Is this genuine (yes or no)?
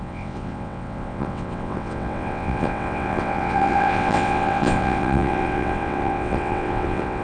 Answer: no